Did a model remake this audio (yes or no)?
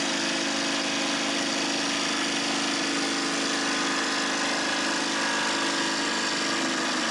no